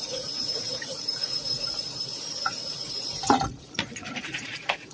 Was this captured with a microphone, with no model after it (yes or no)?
no